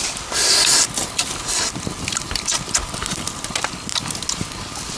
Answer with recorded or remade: recorded